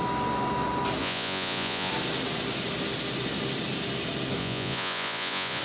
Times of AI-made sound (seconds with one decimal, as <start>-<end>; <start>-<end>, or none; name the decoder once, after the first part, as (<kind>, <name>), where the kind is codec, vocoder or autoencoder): 1.0-1.9 (vocoder, Vocos); 4.4-5.6